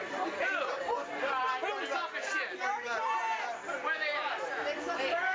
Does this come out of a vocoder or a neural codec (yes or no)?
no